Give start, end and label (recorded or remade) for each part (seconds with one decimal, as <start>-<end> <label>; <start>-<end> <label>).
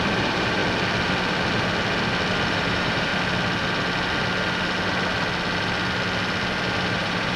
0.0-0.6 remade; 0.6-2.3 recorded; 2.3-3.1 remade; 3.1-6.9 recorded; 6.9-7.4 remade